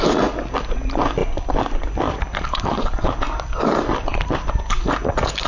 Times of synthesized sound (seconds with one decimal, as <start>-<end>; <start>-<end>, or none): 1.2-4.5